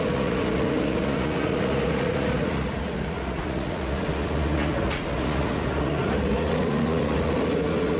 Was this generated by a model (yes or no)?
yes